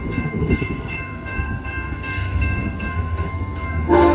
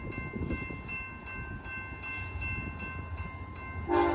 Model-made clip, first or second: first